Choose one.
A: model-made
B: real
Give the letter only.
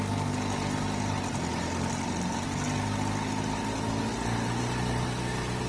B